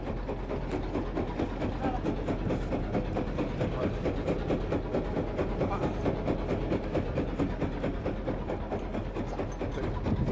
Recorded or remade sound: recorded